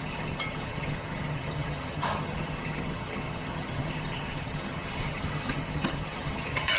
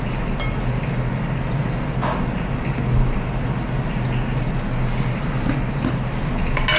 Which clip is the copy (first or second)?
first